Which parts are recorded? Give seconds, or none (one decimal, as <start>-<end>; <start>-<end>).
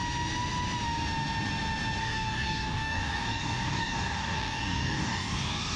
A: 0.0-2.0